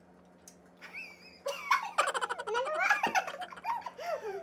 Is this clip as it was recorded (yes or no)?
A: yes